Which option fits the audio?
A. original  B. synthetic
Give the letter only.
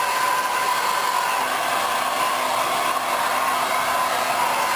A